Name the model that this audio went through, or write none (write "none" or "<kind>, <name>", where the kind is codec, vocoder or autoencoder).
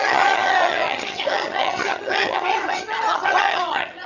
vocoder, HiFi-GAN